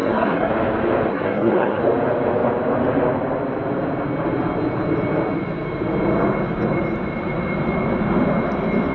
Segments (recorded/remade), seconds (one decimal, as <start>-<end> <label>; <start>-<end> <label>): 0.0-0.5 remade; 0.5-1.1 recorded; 1.1-1.8 remade; 1.8-8.9 recorded